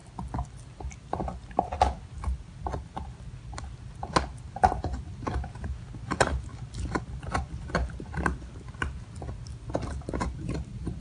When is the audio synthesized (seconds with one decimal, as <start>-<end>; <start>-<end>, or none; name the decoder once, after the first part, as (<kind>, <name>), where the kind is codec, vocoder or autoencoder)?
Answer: none